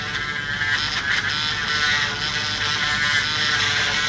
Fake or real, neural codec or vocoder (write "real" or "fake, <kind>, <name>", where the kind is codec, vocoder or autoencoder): real